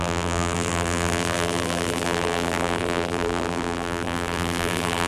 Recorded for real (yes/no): no